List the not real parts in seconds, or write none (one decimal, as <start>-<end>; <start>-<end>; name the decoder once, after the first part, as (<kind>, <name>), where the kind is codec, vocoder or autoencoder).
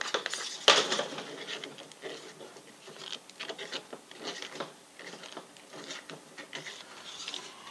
none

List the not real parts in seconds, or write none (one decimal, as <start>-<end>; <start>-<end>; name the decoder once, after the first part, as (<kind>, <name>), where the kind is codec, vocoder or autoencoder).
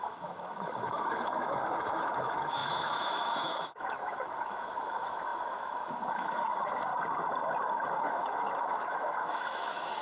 0.0-6.9 (autoencoder, DAC-VAE); 8.0-10.0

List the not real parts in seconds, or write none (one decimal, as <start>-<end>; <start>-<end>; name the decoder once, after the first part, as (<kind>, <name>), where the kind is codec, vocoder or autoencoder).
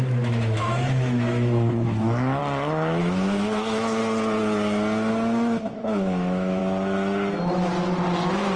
0.0-2.4 (autoencoder, DAC-VAE); 3.0-4.0; 5.1-6.6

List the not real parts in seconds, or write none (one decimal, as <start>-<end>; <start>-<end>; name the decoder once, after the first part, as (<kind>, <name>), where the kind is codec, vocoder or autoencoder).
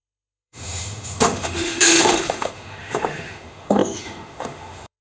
0.0-5.0 (autoencoder, DAC-VAE)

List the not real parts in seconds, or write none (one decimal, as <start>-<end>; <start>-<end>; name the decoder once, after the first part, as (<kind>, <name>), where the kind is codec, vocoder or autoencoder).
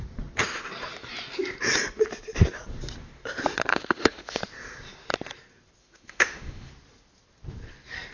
3.7-4.4 (autoencoder, DAC-VAE); 5.8-6.7